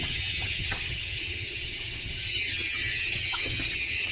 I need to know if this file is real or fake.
fake